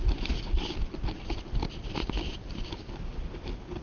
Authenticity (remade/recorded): recorded